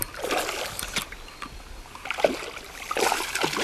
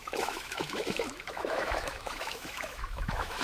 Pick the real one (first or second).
first